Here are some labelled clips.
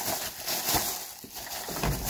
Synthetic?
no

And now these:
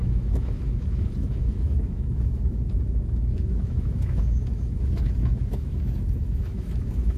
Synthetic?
yes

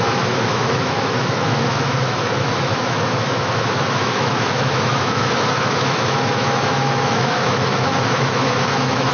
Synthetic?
yes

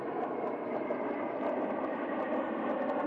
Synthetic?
no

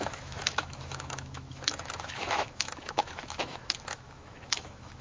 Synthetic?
yes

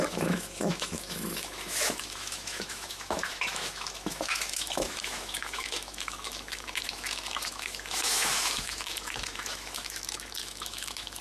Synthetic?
yes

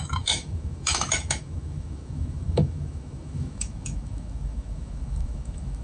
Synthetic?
yes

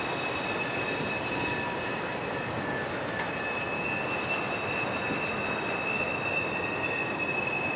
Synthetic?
no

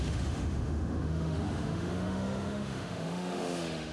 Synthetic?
yes